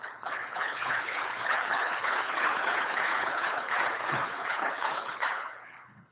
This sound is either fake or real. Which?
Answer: fake